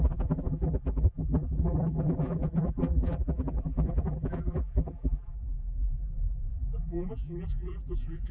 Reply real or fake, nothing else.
fake